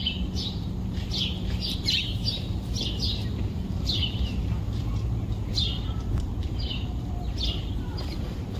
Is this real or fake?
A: fake